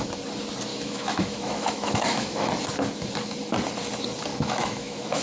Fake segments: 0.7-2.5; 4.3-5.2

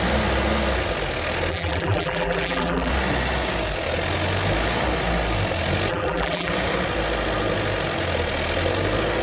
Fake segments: 1.5-2.9; 5.9-6.5

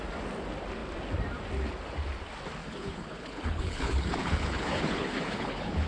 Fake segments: 2.6-5.9

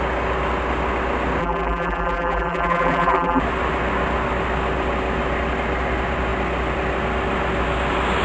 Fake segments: 1.4-3.4

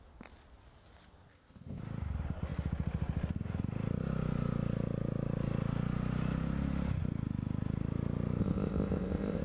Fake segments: 1.3-1.8; 8.4-9.4